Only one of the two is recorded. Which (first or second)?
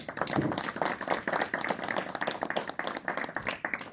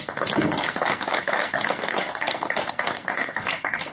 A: first